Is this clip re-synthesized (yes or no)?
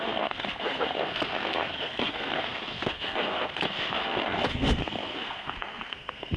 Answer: yes